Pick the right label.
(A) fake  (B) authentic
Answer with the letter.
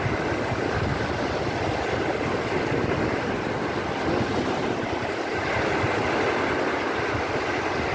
B